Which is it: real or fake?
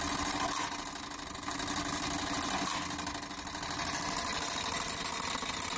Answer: real